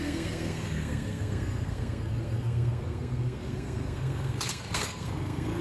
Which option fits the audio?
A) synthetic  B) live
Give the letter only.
A